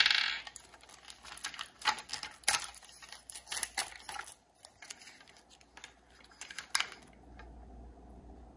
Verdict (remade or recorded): recorded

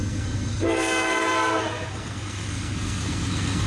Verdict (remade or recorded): remade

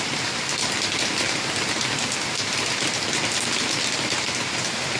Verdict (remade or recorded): recorded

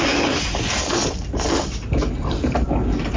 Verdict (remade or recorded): recorded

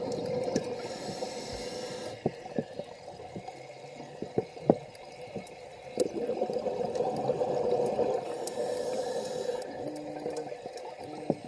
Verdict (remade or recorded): recorded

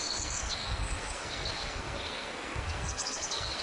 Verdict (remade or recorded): remade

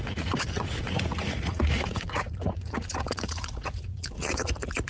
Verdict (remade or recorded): remade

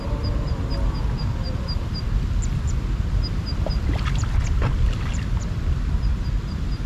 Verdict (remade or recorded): recorded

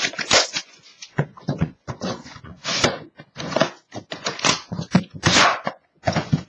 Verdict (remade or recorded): remade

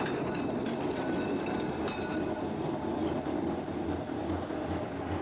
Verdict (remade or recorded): recorded